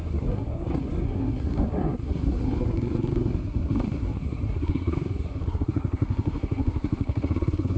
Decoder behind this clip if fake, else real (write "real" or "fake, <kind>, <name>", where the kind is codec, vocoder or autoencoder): fake, codec, SNAC